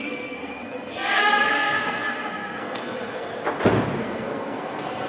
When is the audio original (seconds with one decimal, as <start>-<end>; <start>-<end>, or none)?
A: 3.3-4.0